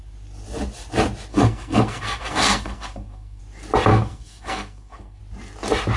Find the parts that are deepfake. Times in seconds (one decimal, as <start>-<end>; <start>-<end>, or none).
1.3-3.4; 3.9-5.2